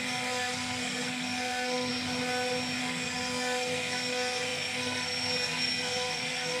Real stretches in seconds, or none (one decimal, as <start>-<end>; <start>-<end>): 1.9-2.8